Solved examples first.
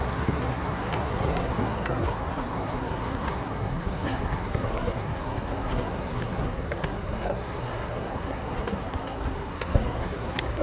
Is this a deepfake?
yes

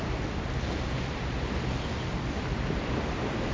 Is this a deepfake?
no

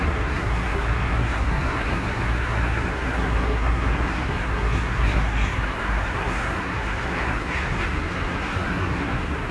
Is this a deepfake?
yes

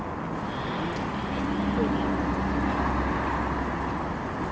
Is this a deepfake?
no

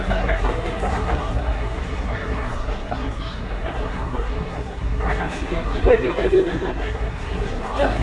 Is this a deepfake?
yes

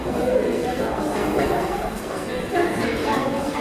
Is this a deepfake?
yes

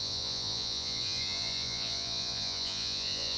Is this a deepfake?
yes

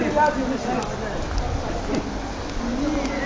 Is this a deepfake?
no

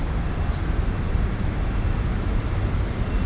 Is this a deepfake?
no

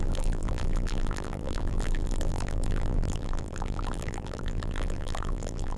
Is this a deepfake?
yes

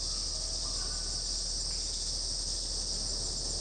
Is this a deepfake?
no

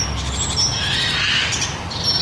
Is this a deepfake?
no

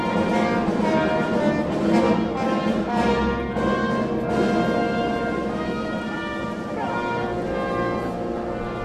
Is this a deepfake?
no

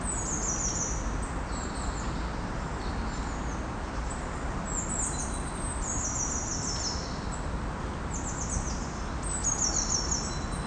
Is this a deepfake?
no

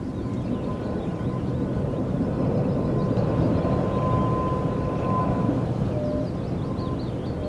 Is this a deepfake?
no